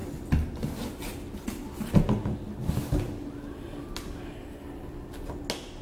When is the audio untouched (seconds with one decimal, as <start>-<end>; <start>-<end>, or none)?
0.0-5.8